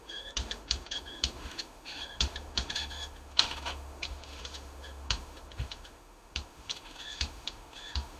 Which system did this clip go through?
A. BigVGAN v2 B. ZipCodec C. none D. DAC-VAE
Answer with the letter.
D